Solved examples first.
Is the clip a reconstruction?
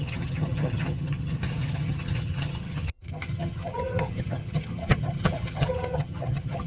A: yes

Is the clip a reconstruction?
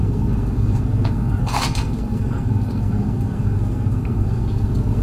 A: yes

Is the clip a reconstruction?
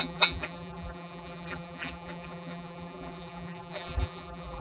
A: yes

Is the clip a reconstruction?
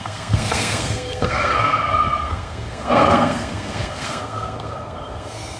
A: yes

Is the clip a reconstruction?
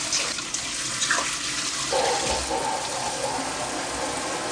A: no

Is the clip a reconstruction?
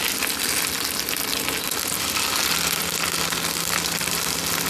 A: no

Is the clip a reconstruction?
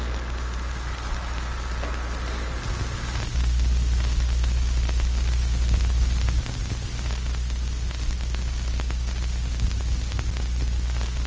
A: no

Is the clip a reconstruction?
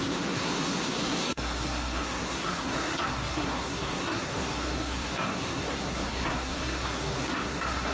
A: yes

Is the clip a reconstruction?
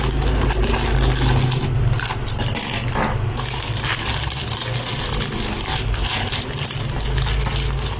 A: no